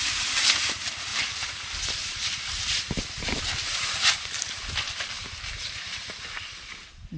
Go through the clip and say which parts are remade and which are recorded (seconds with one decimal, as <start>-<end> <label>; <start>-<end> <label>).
0.0-1.1 recorded; 1.1-2.8 remade; 2.8-7.2 recorded